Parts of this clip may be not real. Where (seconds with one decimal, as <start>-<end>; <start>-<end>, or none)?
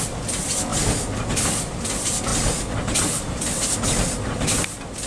none